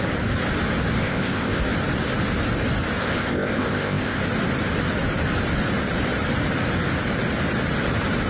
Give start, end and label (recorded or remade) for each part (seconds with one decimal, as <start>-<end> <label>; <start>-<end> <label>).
0.0-1.0 recorded; 1.0-1.6 remade; 1.6-3.0 recorded; 3.0-4.2 remade; 4.2-8.3 recorded